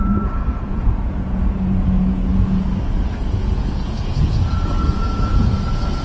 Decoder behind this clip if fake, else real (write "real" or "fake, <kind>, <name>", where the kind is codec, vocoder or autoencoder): fake, vocoder, Vocos